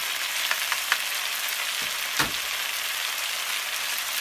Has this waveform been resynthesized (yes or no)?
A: no